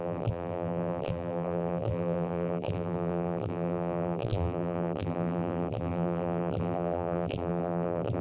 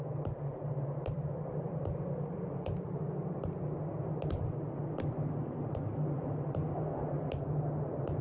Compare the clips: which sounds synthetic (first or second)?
first